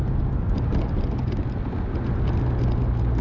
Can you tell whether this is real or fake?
real